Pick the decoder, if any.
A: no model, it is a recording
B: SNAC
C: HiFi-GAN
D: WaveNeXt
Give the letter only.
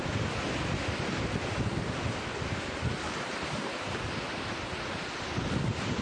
A